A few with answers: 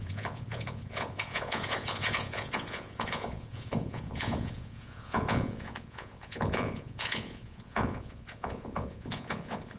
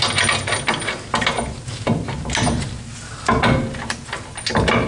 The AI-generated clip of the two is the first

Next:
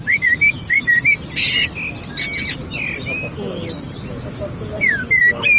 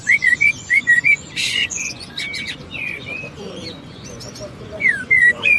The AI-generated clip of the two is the second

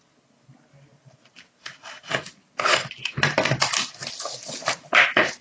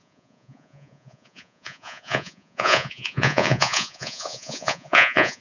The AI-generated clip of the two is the second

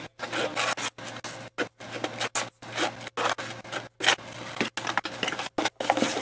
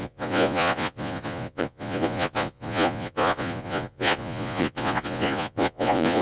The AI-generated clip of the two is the second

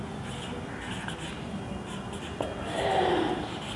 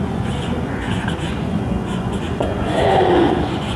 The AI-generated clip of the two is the second